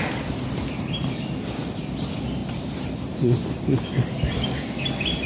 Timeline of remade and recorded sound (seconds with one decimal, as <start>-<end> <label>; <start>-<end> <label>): 0.0-5.3 recorded